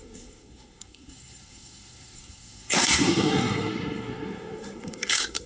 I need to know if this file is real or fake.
fake